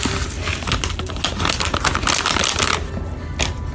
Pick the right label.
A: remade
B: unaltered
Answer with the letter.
B